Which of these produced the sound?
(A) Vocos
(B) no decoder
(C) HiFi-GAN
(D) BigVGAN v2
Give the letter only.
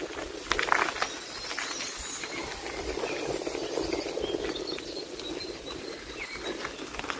B